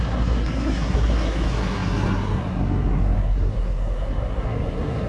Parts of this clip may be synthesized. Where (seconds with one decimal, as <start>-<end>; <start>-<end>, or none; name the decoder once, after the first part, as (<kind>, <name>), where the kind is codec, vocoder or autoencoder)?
0.0-5.1 (codec, SNAC)